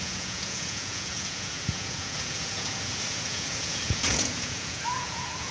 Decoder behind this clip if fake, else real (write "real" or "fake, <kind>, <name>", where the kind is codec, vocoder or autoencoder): fake, vocoder, Vocos